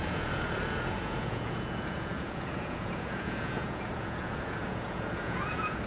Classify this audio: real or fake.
fake